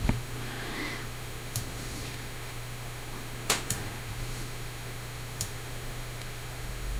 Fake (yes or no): yes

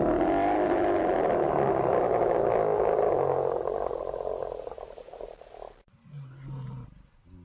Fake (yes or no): no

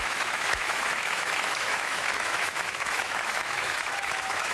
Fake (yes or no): yes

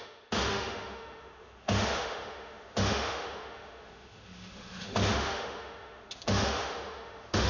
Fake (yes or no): yes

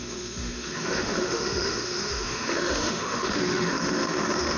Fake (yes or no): yes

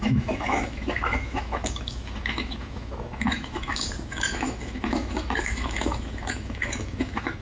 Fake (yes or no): yes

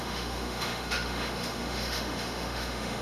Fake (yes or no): yes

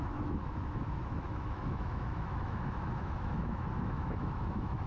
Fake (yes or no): yes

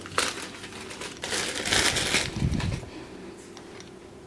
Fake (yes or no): no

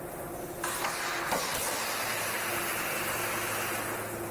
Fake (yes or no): no